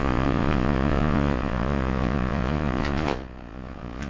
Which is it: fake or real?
fake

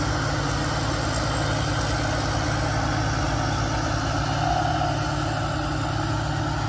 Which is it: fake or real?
real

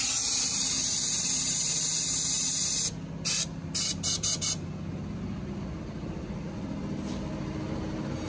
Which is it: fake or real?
real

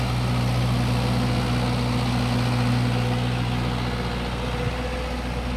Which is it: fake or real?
real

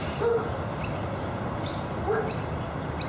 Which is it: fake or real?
real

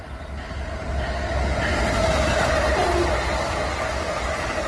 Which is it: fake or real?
real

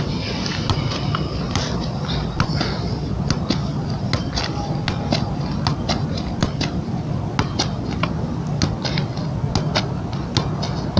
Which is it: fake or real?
real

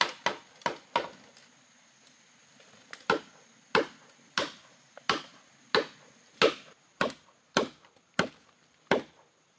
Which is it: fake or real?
real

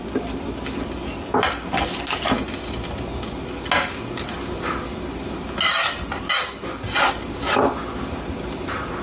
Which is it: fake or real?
real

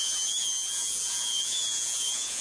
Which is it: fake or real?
fake